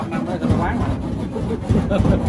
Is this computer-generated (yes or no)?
no